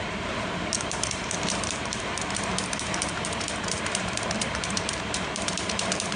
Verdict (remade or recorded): remade